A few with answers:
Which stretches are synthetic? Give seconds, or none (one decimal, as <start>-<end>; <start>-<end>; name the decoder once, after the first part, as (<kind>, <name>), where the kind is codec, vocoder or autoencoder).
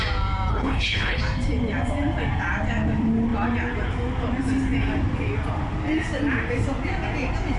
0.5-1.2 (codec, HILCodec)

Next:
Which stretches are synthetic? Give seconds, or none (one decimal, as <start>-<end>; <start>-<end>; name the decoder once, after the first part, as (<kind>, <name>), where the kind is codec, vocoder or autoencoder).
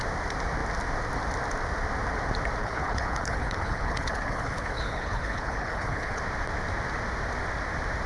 2.6-6.2 (codec, HILCodec)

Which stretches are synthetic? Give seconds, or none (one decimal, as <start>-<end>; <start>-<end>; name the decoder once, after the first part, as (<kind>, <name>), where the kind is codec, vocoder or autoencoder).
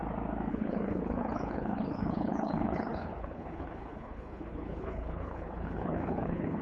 0.5-6.6 (codec, HILCodec)